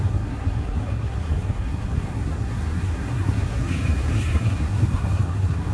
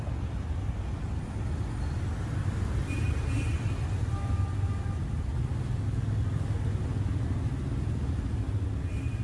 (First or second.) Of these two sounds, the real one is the second